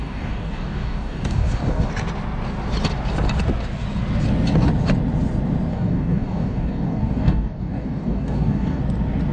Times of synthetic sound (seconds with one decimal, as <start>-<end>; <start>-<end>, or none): 0.0-1.9; 5.7-8.8